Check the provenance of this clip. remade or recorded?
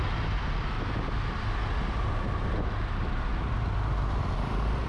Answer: recorded